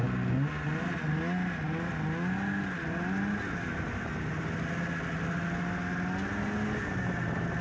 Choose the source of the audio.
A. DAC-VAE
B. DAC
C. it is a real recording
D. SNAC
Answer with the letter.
C